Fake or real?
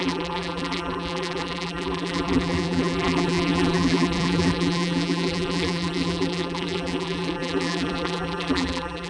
fake